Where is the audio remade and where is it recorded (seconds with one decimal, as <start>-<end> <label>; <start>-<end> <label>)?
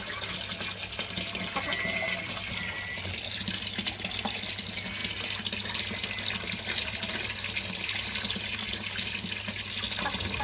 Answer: 0.0-10.4 recorded